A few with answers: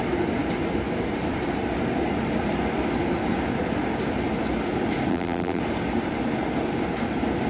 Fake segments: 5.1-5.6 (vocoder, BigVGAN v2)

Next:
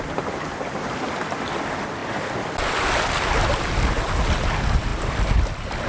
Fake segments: none

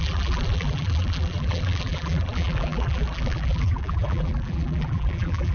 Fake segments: 0.0-5.5 (vocoder, BigVGAN v2)

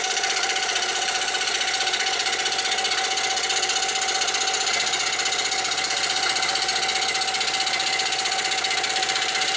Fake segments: 0.0-1.5 (vocoder, BigVGAN v2); 5.9-6.7; 8.9-9.6

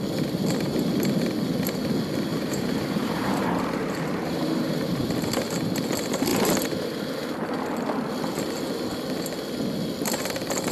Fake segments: 2.3-5.1 (vocoder, BigVGAN v2)